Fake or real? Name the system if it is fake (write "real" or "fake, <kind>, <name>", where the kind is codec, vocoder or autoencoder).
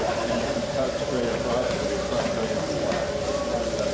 real